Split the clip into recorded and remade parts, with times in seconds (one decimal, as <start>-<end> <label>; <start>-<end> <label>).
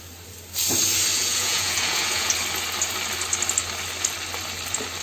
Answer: 0.0-1.1 recorded; 1.1-2.3 remade; 2.3-5.0 recorded